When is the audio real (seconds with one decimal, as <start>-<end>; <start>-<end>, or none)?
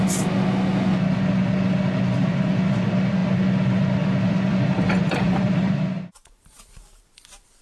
0.0-2.2; 2.8-4.5; 6.6-7.6